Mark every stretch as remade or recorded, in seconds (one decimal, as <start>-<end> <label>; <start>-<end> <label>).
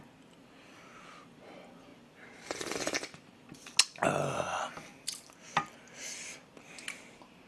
0.0-7.5 recorded